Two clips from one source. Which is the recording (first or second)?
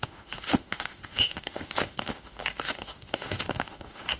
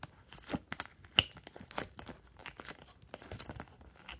second